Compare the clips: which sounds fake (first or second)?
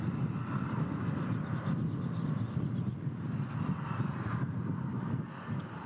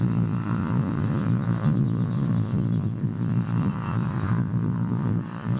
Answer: second